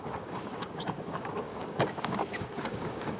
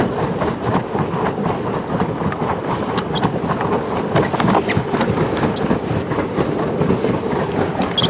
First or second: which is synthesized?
first